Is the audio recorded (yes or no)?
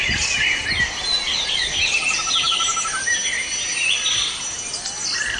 yes